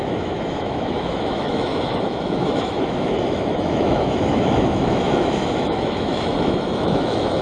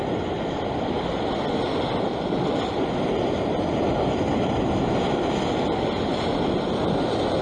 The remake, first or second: first